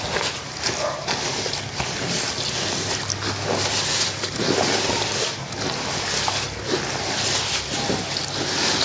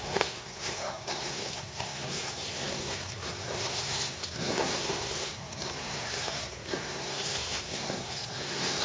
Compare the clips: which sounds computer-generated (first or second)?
second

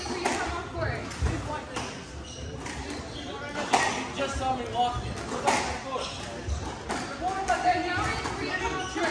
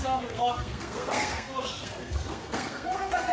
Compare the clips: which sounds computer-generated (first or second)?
second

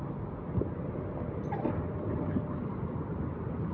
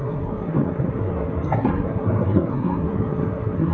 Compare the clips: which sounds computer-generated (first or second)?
second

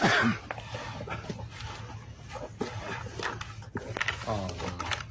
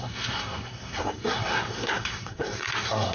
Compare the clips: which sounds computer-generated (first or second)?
second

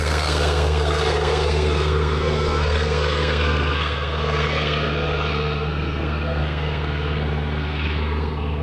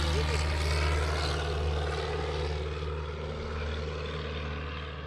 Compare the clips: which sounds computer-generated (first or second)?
first